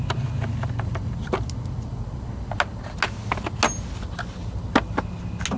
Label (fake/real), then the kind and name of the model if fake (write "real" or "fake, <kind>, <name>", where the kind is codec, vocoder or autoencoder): real